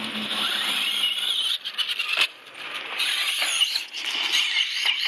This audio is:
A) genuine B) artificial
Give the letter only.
A